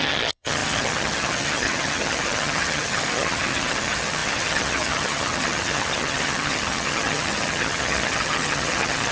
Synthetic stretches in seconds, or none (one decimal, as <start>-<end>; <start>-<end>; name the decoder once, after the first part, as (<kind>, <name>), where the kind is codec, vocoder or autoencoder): 0.0-9.1 (vocoder, HiFi-GAN)